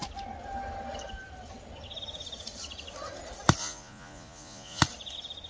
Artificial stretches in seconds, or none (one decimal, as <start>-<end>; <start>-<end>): 3.6-4.8